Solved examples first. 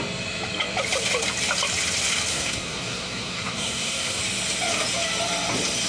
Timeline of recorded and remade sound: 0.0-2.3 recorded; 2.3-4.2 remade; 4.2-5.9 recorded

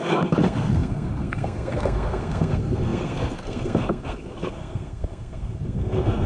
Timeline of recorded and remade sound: 0.0-6.3 remade

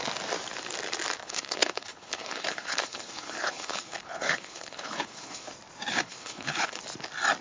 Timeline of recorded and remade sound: 0.0-1.2 recorded; 1.2-5.5 remade; 5.5-5.9 recorded; 5.9-6.8 remade; 6.8-7.4 recorded

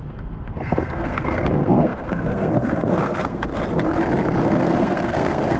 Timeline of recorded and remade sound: 0.0-3.5 remade; 3.5-4.4 recorded; 4.4-5.6 remade

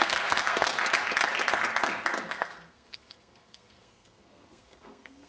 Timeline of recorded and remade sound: 0.0-0.7 remade; 0.7-2.3 recorded; 2.3-5.3 remade

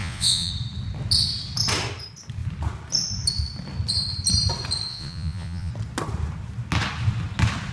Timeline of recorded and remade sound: 0.0-0.5 remade; 0.5-4.9 recorded; 4.9-5.7 remade; 5.7-7.7 recorded

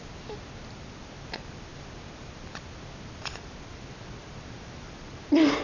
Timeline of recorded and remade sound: 0.0-5.6 recorded